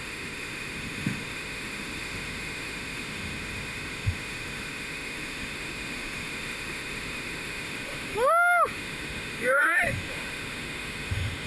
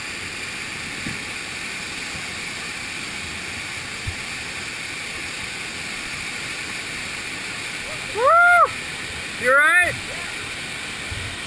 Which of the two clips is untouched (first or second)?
second